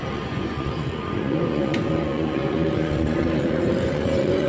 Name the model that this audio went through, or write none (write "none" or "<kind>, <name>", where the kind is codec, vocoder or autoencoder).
vocoder, Vocos